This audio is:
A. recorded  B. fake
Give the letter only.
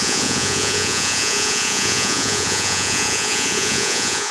B